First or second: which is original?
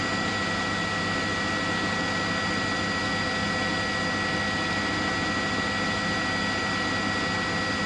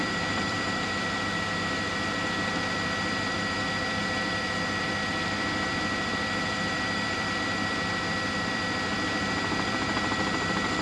first